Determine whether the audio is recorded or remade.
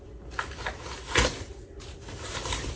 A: recorded